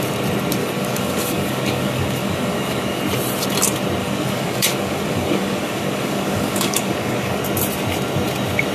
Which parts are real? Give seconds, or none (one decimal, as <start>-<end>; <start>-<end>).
0.0-0.6; 3.0-4.0; 7.4-8.7